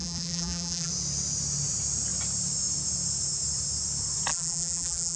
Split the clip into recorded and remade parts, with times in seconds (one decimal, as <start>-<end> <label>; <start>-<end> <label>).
0.0-0.9 remade; 0.9-4.3 recorded; 4.3-5.2 remade